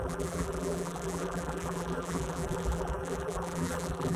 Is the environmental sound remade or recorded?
remade